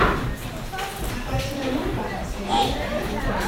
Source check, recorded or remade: remade